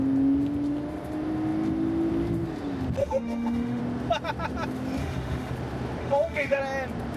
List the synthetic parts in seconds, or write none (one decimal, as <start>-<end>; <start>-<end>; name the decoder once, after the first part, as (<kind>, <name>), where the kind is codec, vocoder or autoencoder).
3.0-3.8 (autoencoder, DAC-VAE); 5.0-5.5; 6.0-6.6